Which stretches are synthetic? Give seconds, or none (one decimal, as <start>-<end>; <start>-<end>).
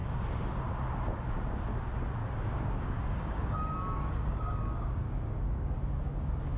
2.2-6.6